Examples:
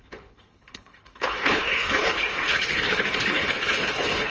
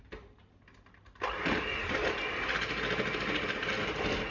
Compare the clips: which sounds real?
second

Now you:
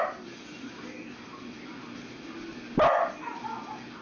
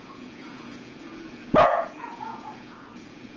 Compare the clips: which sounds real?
first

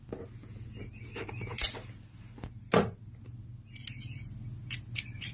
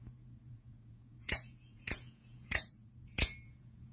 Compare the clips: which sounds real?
first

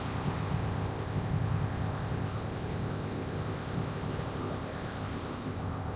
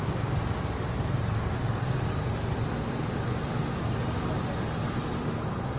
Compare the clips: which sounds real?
second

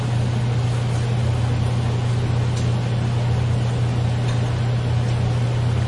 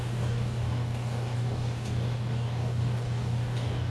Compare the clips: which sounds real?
first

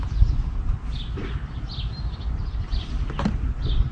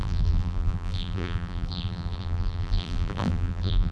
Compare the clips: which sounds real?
first